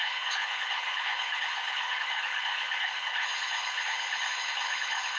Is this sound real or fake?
fake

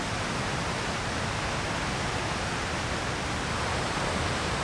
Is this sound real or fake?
real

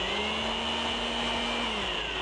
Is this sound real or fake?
real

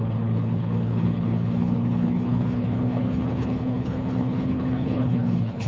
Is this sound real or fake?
fake